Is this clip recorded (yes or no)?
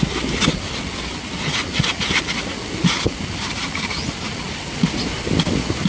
yes